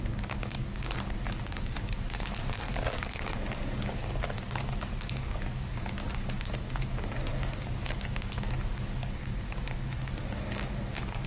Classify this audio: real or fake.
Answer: fake